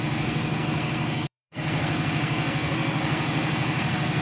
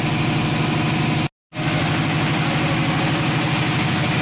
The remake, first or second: first